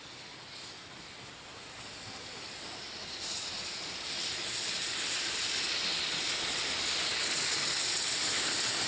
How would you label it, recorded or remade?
recorded